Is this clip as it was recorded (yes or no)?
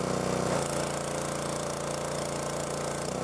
yes